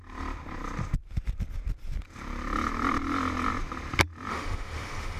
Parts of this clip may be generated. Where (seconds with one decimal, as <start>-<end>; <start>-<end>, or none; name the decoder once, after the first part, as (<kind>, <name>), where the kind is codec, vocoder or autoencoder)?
4.3-5.2 (autoencoder, DAC-VAE)